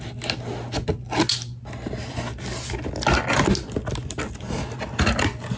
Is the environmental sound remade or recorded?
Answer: recorded